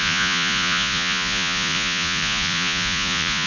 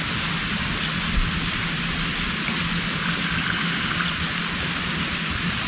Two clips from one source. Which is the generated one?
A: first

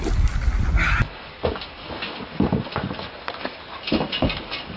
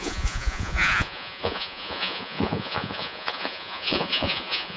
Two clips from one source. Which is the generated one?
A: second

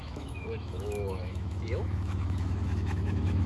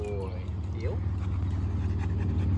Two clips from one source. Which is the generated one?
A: first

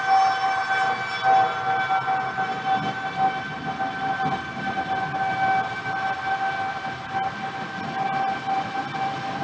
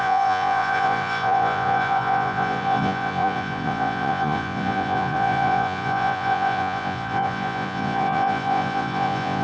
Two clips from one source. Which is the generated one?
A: second